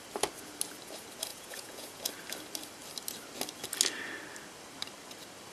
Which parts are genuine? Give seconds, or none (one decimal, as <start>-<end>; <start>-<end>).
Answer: 0.0-1.3; 2.0-5.5